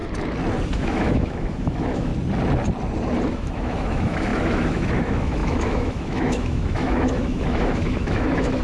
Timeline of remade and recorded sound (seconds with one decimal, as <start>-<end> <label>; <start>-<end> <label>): 0.0-0.7 recorded; 0.7-2.1 remade; 2.1-3.3 recorded; 3.3-8.6 remade